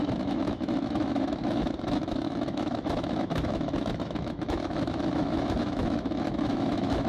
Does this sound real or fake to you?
fake